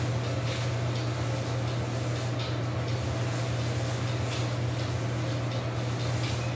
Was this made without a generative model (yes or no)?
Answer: yes